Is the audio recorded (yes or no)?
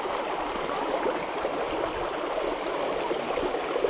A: yes